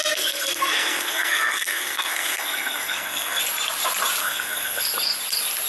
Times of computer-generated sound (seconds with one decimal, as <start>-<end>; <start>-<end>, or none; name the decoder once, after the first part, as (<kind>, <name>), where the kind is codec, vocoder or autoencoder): 0.0-3.4 (codec, SNAC); 4.2-4.8